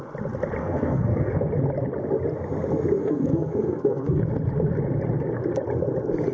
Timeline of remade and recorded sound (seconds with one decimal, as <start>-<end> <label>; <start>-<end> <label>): 0.0-0.6 recorded; 0.6-1.5 remade; 1.5-3.0 recorded; 3.0-4.2 remade; 4.2-6.3 recorded